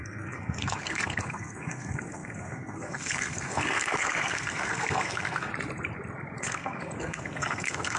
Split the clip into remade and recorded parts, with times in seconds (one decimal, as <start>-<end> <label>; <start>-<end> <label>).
0.0-5.5 remade; 5.5-6.4 recorded; 6.4-8.0 remade